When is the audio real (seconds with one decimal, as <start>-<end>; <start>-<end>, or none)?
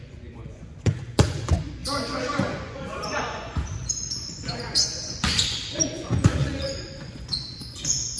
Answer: none